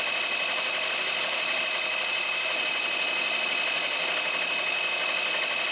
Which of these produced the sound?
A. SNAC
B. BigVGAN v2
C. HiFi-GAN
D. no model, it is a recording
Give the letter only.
D